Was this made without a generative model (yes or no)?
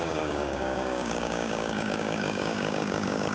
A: no